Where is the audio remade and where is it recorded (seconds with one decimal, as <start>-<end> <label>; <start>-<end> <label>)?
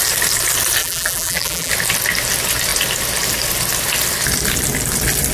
0.0-0.8 recorded; 0.8-1.7 remade; 1.7-5.3 recorded